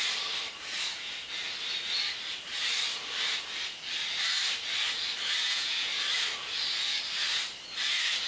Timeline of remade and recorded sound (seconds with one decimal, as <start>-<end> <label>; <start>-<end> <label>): 0.0-5.4 recorded; 5.4-5.9 remade; 5.9-8.3 recorded